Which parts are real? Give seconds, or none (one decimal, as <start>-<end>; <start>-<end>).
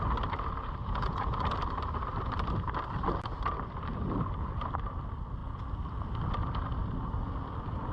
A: 0.0-0.8; 1.4-7.9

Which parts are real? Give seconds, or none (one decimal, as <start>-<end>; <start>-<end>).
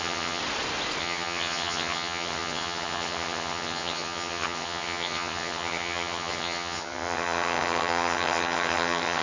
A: 0.4-1.0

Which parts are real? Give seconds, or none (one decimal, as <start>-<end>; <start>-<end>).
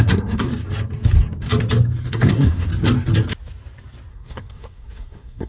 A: 0.5-2.1; 2.7-4.1